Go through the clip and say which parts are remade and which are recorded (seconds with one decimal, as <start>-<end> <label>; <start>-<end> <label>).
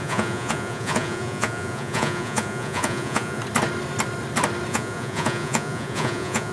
0.0-3.4 remade; 3.4-4.7 recorded; 4.7-6.5 remade